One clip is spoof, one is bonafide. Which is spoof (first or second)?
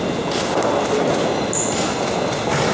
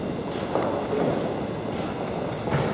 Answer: second